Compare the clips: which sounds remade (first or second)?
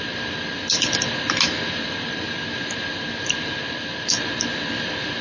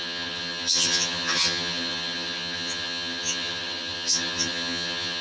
second